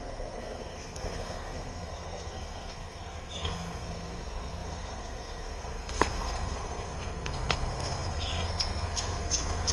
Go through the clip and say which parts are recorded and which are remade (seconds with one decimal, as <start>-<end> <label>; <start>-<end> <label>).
0.0-9.7 remade